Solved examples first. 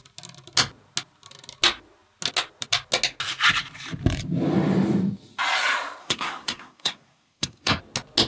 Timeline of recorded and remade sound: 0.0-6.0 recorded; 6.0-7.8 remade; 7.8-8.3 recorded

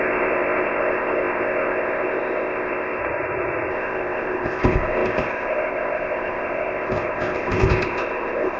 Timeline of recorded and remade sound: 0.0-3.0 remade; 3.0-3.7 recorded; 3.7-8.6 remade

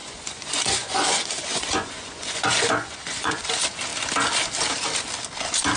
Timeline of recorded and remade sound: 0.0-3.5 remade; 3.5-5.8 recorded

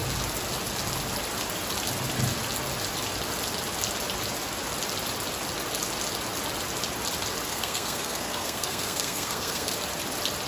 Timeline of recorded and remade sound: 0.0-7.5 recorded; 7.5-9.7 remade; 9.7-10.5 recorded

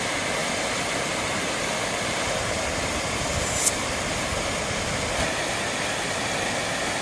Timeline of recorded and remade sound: 0.0-0.4 recorded; 0.4-4.6 remade; 4.6-7.0 recorded